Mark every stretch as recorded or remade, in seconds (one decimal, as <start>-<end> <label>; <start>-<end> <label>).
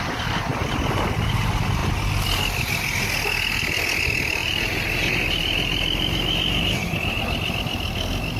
0.0-4.4 recorded; 4.4-7.2 remade; 7.2-8.4 recorded